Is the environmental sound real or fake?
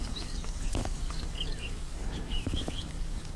fake